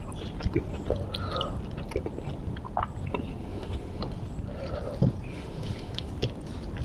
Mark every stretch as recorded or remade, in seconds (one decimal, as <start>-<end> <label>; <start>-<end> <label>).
0.0-3.4 recorded; 3.4-4.0 remade; 4.0-5.3 recorded; 5.3-6.1 remade; 6.1-6.8 recorded